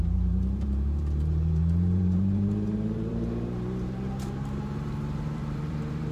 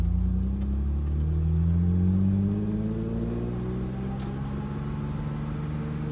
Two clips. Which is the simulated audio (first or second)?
first